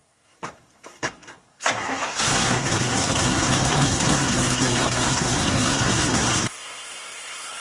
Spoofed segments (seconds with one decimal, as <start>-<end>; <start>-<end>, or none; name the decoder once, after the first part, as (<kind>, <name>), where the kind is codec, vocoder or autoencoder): 0.0-7.6 (codec, SNAC)

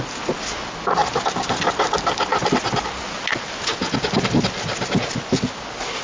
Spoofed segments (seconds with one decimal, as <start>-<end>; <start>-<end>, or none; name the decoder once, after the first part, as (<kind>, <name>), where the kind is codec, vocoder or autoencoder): none

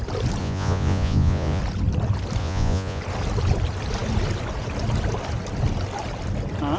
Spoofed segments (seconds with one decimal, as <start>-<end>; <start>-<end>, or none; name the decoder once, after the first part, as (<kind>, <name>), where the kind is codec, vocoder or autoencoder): 0.4-1.6 (vocoder, Vocos); 2.4-3.0